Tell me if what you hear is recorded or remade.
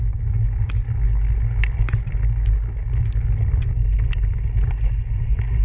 recorded